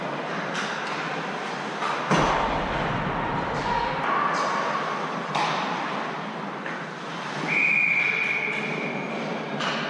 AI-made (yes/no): no